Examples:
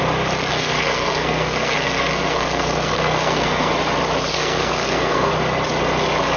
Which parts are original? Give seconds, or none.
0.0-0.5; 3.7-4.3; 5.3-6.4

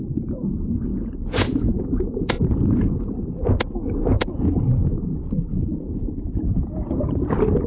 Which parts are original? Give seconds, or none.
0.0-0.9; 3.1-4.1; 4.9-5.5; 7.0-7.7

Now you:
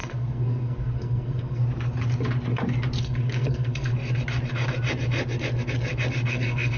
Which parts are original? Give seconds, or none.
1.6-3.0; 3.9-6.3